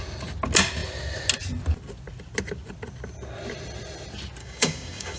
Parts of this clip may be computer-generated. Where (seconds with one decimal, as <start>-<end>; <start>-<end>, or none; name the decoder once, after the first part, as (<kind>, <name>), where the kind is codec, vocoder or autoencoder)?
4.4-5.2 (codec, DAC)